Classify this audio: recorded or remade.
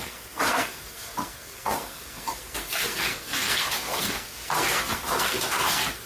remade